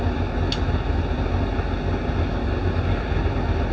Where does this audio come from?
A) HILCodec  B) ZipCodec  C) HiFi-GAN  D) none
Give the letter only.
D